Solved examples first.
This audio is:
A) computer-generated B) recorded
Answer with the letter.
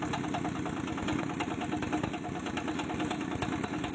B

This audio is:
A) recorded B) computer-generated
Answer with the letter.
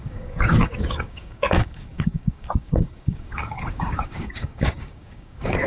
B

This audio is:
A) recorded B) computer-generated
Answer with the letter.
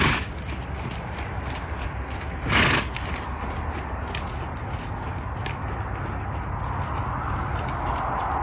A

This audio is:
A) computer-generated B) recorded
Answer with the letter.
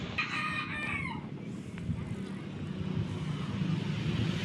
B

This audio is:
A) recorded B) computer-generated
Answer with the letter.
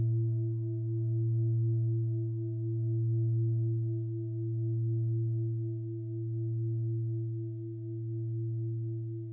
A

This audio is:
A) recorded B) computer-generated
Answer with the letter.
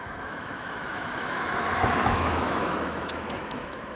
B